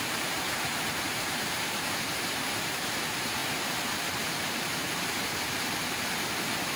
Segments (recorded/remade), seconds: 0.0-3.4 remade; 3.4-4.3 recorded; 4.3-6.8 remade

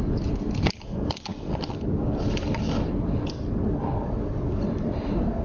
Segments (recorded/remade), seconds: 0.0-5.4 recorded

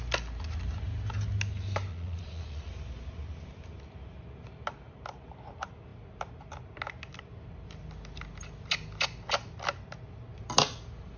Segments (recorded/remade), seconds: 0.0-1.9 recorded; 1.9-2.7 remade; 2.7-11.2 recorded

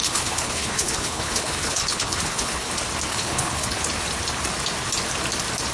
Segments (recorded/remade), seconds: 0.0-2.7 remade; 2.7-3.1 recorded; 3.1-3.8 remade; 3.8-5.7 recorded

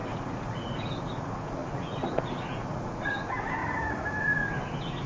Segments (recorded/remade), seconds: 0.0-3.6 remade; 3.6-4.2 recorded; 4.2-5.1 remade

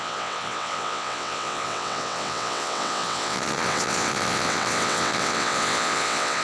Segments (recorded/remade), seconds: 0.0-6.4 remade

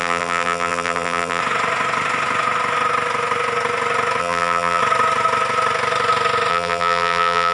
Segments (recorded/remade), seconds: 0.0-1.4 remade; 1.4-4.2 recorded; 4.2-4.8 remade; 4.8-6.5 recorded; 6.5-7.5 remade

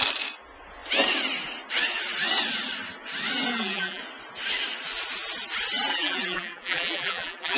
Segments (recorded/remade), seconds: 0.0-3.5 recorded; 3.5-4.0 remade; 4.0-5.9 recorded; 5.9-7.6 remade